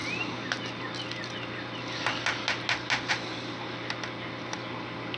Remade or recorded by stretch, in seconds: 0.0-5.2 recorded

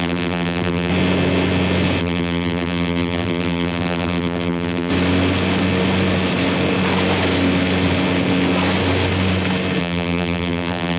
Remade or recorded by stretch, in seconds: 0.0-0.9 remade; 0.9-2.0 recorded; 2.0-4.9 remade; 4.9-9.8 recorded; 9.8-11.0 remade

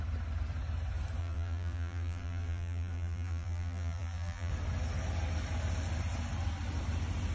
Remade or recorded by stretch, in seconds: 0.0-1.2 recorded; 1.2-4.5 remade; 4.5-7.3 recorded